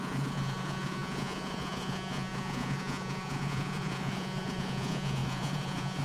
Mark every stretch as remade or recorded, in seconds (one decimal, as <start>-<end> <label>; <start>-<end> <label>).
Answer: 0.0-6.0 remade